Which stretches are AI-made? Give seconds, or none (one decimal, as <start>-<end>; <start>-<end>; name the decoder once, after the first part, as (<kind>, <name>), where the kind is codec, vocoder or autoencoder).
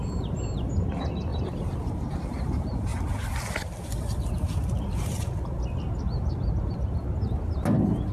1.3-1.8 (vocoder, BigVGAN v2); 2.9-5.4